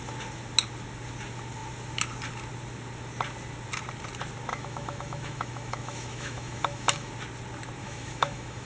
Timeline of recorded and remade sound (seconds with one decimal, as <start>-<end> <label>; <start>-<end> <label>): 0.0-4.5 recorded; 4.5-7.1 remade; 7.1-7.8 recorded; 7.8-8.7 remade